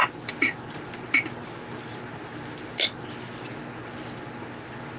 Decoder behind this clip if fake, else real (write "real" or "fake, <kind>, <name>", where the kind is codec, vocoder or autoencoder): real